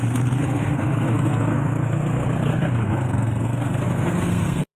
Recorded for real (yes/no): no